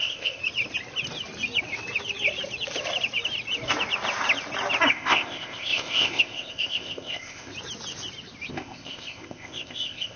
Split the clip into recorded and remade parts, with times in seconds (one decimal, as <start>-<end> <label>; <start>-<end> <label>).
0.0-0.4 remade; 0.4-4.9 recorded; 4.9-7.5 remade; 7.5-8.5 recorded; 8.5-10.2 remade